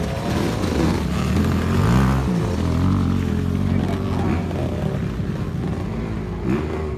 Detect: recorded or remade recorded